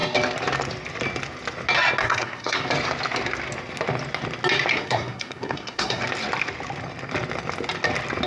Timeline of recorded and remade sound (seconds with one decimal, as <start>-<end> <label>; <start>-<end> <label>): 0.0-2.0 recorded; 2.0-2.6 remade; 2.6-4.7 recorded; 4.7-6.0 remade; 6.0-8.3 recorded